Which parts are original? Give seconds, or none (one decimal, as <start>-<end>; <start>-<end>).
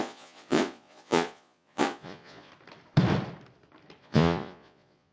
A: 2.5-4.0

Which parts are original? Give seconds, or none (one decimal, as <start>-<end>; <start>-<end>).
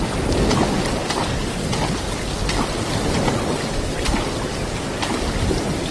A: 0.0-5.9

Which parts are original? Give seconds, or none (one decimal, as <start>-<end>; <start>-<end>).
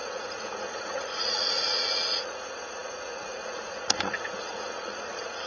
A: none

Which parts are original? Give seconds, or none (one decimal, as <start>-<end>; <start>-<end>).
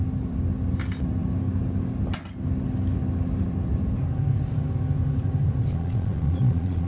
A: 0.0-5.7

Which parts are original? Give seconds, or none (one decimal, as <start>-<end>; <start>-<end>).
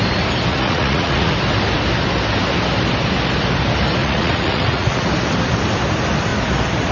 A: 0.0-0.5; 1.3-4.0; 5.1-6.9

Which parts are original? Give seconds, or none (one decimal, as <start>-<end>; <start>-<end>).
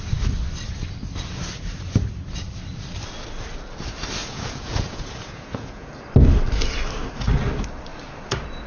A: 0.0-4.2; 5.9-8.7